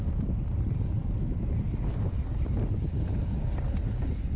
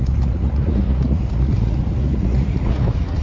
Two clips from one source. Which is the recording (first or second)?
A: first